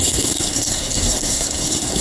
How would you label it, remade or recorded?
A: remade